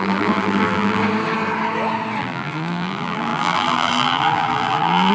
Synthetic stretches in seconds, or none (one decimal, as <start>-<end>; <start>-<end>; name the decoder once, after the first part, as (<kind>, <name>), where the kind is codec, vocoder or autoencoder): 0.0-1.0 (vocoder, BigVGAN v2); 2.2-5.1